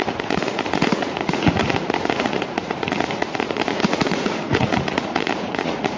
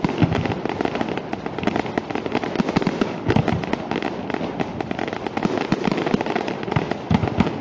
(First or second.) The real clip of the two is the second